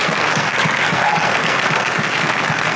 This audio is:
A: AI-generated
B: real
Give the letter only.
A